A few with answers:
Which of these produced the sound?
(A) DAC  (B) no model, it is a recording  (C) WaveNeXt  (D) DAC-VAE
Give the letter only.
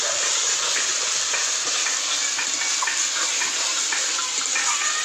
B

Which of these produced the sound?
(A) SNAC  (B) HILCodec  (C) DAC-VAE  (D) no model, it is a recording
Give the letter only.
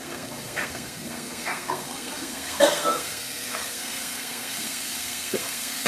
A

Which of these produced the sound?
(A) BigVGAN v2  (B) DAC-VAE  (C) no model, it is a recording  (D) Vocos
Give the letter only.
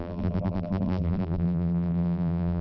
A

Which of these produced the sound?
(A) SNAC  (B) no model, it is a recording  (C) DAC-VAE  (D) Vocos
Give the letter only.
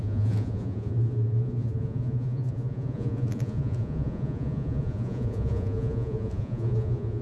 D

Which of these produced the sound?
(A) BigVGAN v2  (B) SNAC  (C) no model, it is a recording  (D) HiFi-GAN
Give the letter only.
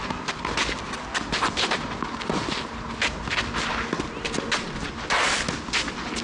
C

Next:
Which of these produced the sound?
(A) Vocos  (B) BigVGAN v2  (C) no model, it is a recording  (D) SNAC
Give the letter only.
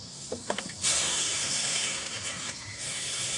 D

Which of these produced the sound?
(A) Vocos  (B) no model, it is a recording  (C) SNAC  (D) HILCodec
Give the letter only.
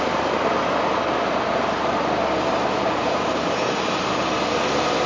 B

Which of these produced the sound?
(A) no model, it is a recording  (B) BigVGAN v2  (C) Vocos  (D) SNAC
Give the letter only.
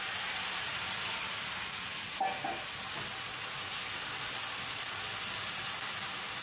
A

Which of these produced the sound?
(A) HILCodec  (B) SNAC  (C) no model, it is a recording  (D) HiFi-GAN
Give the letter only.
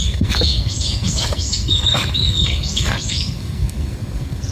B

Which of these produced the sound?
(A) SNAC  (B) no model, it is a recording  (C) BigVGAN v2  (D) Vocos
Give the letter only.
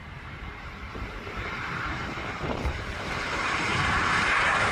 C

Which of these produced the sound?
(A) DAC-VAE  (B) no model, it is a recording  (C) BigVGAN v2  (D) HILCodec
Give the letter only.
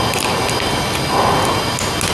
B